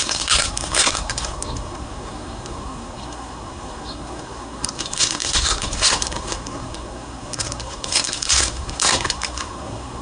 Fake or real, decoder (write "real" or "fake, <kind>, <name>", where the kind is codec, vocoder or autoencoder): fake, codec, SNAC